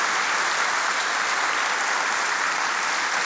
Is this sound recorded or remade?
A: recorded